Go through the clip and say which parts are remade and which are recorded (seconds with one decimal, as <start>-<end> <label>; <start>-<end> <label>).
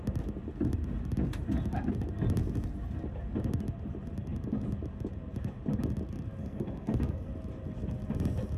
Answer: 0.0-6.4 recorded; 6.4-7.3 remade; 7.3-8.6 recorded